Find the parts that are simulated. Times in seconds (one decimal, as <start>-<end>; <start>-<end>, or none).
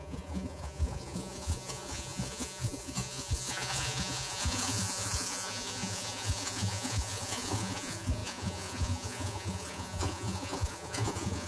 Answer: 0.0-11.5